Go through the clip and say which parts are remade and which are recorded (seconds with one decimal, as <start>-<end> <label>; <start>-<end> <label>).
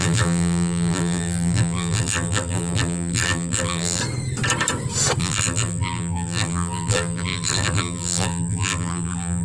0.0-4.0 remade; 4.0-5.2 recorded; 5.2-9.4 remade